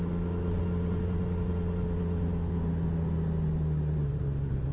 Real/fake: real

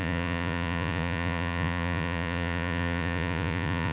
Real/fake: fake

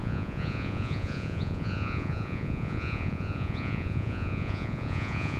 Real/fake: fake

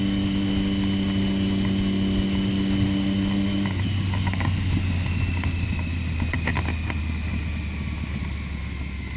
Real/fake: real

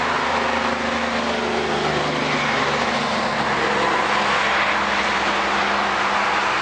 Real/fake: real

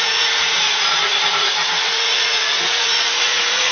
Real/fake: fake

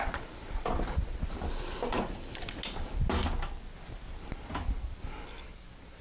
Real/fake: real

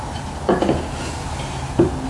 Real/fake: real